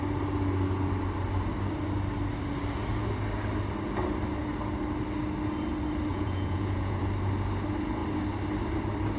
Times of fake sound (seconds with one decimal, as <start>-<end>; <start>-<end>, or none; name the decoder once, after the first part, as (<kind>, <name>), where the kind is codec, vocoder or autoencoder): 6.1-7.0 (vocoder, Vocos)